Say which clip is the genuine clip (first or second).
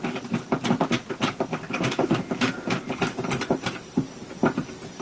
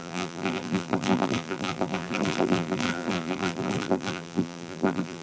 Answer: first